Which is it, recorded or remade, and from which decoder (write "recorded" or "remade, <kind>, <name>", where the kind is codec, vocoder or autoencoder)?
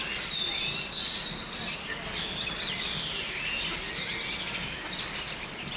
recorded